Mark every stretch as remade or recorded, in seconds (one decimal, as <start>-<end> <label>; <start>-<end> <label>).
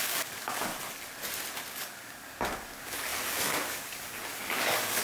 0.0-0.7 remade; 0.7-1.7 recorded; 1.7-5.0 remade